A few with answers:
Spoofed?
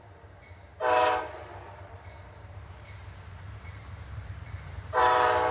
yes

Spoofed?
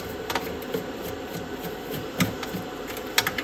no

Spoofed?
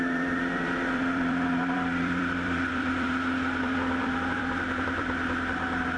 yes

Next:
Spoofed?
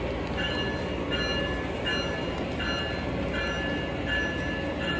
no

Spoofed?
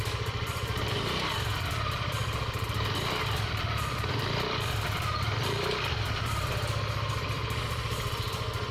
yes